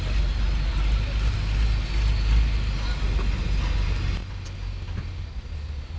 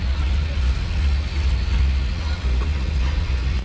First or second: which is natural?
first